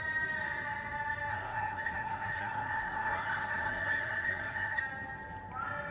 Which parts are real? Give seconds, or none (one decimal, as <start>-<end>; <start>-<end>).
0.0-1.3; 4.8-5.9